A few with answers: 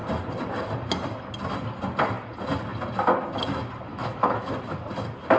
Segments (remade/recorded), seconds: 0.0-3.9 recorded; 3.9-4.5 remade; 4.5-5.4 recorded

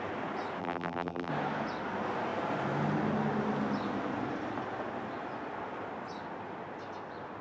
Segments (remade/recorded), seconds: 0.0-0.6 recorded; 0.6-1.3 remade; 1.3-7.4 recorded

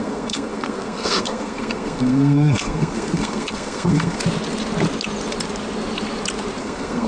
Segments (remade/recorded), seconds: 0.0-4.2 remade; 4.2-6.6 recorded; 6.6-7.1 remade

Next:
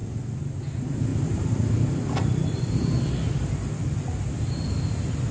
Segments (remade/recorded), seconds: 0.0-1.1 recorded; 1.1-3.5 remade; 3.5-5.3 recorded

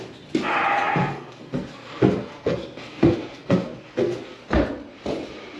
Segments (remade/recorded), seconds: 0.0-1.0 recorded; 1.0-4.4 remade; 4.4-5.6 recorded